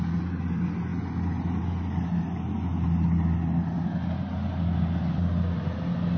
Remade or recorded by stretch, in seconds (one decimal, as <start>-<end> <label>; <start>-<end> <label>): 0.0-6.2 recorded